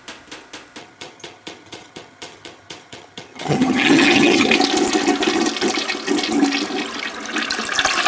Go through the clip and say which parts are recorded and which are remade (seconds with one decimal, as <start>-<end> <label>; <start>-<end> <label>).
0.0-0.8 recorded; 0.8-4.5 remade; 4.5-8.1 recorded